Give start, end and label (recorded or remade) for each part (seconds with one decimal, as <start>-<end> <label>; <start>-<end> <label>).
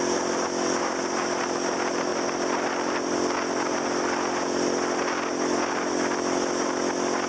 0.0-7.3 recorded